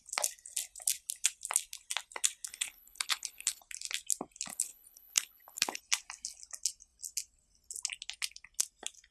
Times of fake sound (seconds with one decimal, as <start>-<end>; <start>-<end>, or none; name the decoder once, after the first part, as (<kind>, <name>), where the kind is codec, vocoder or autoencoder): 2.5-3.6 (codec, HILCodec); 4.5-5.8